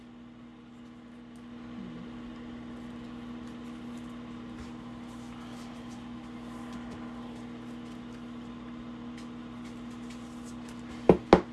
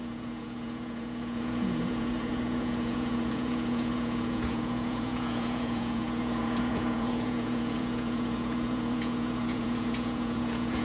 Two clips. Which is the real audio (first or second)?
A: first